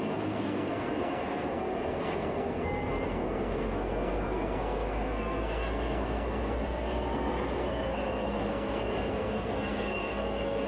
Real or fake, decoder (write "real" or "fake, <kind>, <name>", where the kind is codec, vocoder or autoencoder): fake, codec, SNAC